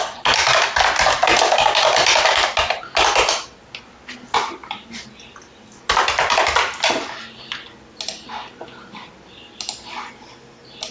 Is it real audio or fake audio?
real